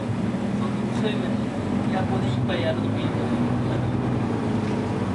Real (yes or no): yes